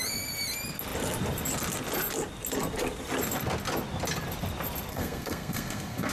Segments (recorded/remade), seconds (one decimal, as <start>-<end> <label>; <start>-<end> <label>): 0.0-4.9 recorded; 4.9-6.1 remade